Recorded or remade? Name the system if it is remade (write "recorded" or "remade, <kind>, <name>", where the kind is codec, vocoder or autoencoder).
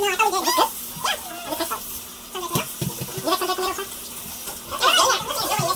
recorded